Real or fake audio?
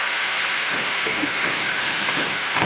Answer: fake